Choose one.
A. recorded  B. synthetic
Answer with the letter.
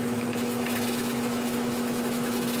B